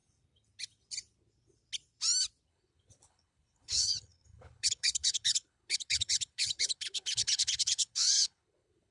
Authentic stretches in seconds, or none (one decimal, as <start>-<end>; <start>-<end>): 0.0-2.5